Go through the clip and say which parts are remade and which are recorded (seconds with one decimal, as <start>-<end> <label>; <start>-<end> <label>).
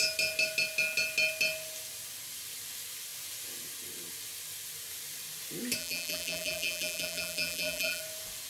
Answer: 0.0-5.8 recorded; 5.8-8.0 remade; 8.0-8.5 recorded